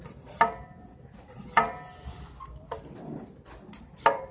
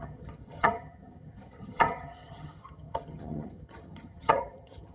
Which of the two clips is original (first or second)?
first